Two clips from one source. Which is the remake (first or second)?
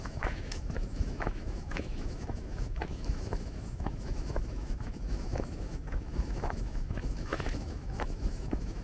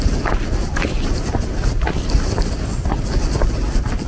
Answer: first